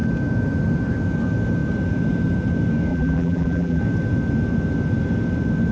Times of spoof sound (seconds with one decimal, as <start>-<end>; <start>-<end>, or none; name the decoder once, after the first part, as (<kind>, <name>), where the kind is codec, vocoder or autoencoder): 2.9-3.8 (vocoder, BigVGAN v2)